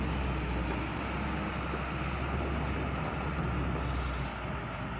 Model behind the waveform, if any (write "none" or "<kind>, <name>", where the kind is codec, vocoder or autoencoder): none